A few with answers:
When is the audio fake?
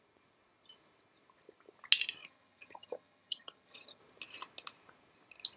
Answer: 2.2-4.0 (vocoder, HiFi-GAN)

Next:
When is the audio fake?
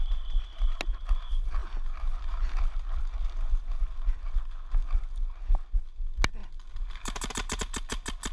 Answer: 6.4-7.6 (vocoder, BigVGAN v2)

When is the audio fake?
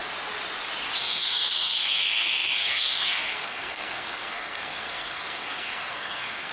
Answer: 1.0-6.5 (codec, SNAC)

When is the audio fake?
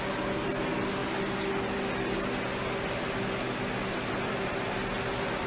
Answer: none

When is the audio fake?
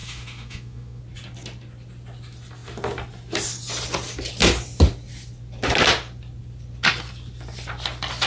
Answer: 0.0-1.0 (autoencoder, DAC-VAE)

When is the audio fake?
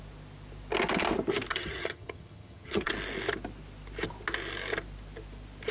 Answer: 1.5-2.9 (vocoder, HiFi-GAN)